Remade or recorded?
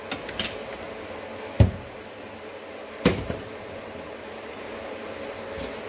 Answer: recorded